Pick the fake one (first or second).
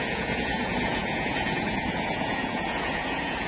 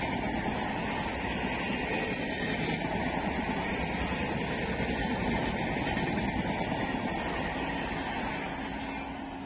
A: first